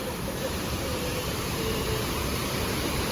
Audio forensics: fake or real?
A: fake